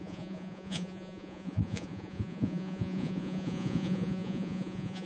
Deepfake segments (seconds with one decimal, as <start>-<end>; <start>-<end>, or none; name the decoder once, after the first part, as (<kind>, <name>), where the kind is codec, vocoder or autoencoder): 0.0-5.1 (vocoder, Vocos)

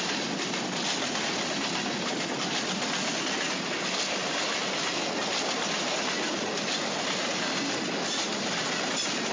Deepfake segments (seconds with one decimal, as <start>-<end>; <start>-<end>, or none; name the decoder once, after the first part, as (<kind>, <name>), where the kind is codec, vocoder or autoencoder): none

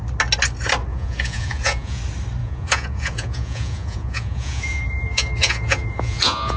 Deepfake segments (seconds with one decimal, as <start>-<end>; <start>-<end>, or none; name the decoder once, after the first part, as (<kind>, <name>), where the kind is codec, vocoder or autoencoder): 0.9-2.0 (vocoder, Vocos); 2.4-6.6